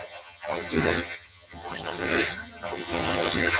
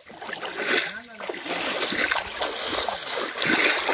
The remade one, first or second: first